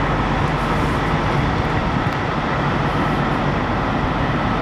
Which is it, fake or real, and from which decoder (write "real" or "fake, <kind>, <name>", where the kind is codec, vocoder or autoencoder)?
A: real